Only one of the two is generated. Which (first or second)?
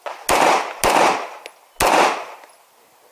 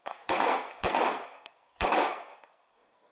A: second